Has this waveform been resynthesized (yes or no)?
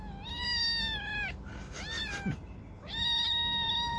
no